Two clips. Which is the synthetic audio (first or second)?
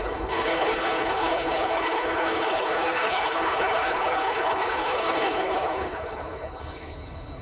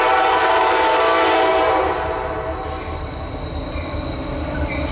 first